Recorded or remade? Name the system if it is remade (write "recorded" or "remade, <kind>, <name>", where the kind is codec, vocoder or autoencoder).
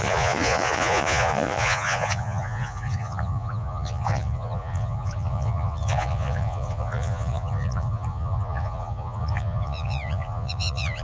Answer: remade, vocoder, Vocos